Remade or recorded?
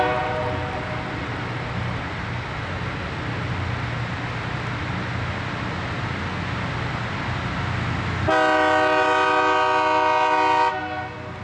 recorded